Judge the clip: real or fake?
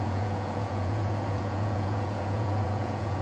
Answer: fake